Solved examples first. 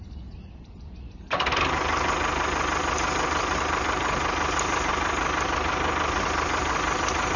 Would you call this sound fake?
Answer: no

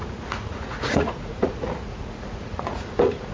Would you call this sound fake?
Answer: yes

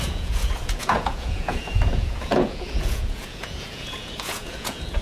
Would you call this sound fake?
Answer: yes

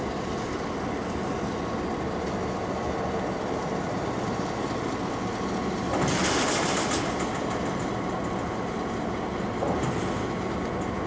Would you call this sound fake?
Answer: no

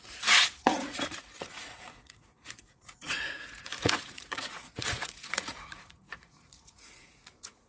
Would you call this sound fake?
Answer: yes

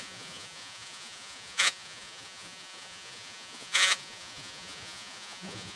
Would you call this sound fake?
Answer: yes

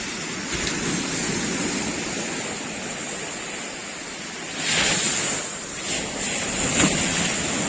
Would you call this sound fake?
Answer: no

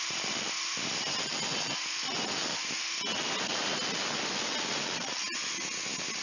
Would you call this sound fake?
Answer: no